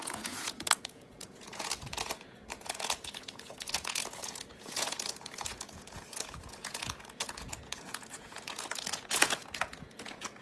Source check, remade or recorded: remade